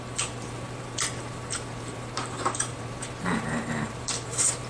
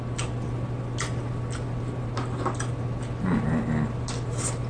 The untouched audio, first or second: second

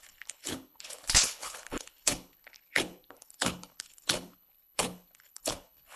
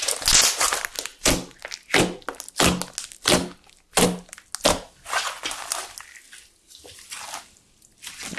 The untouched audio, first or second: second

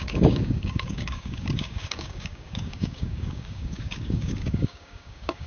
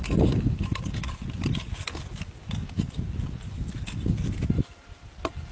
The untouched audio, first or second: second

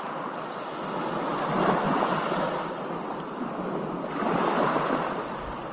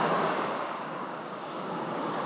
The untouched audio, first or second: first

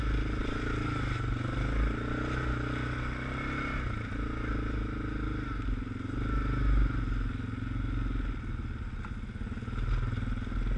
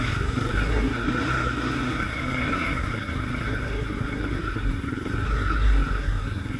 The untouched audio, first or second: first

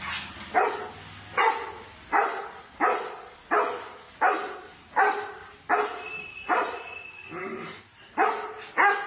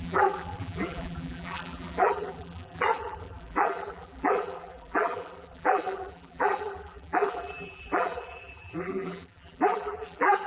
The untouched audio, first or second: first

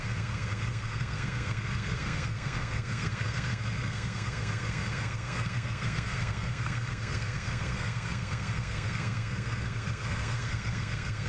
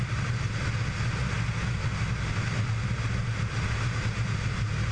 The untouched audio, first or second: second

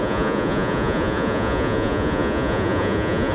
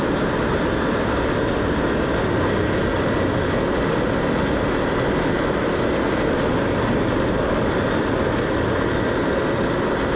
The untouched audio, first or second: second